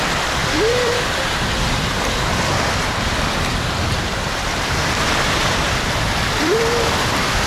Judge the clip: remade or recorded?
remade